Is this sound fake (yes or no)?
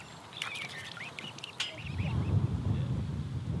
no